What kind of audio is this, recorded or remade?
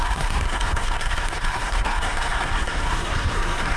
remade